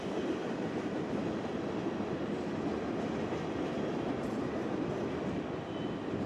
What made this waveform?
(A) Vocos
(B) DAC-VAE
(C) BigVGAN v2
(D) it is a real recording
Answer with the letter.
D